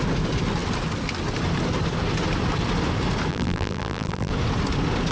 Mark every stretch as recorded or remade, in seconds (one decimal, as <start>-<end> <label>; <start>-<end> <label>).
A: 0.0-3.3 recorded; 3.3-4.3 remade; 4.3-5.1 recorded